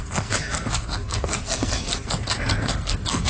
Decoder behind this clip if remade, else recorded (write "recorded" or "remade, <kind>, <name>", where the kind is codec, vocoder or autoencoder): remade, codec, SNAC